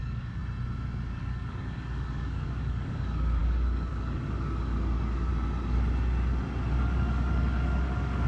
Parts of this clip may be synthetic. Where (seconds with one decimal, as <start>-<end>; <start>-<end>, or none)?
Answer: 0.0-0.4; 1.1-5.3; 6.7-8.3